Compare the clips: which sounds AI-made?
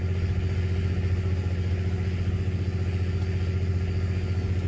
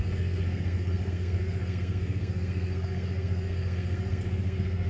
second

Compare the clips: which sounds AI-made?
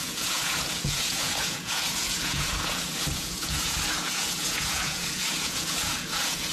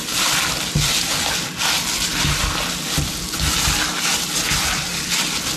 first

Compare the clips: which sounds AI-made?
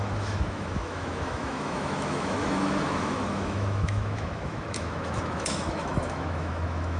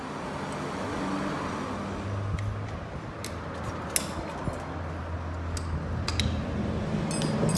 first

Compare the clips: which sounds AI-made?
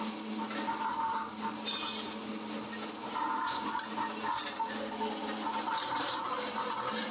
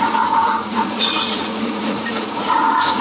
second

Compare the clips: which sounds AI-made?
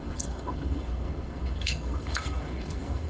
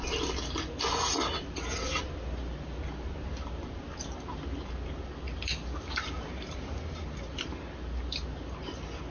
first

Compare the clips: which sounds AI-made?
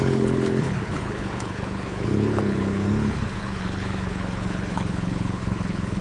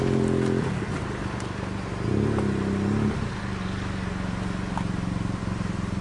first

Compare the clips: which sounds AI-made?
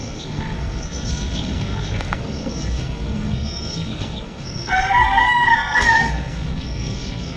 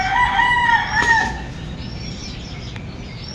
first